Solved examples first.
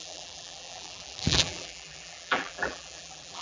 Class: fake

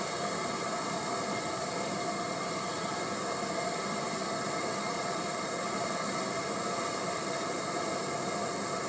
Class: real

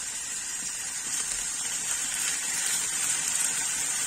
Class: fake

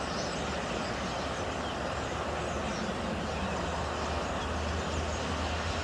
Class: real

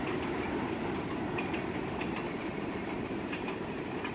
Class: fake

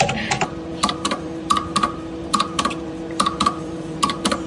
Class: fake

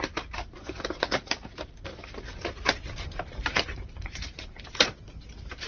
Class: fake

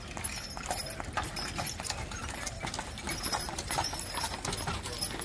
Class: fake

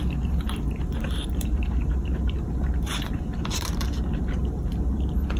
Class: fake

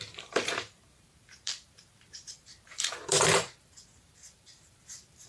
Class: fake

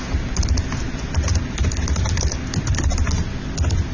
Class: real